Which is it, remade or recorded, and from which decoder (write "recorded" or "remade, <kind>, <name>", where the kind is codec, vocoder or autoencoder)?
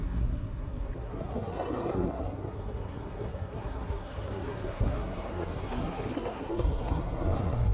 remade, codec, SNAC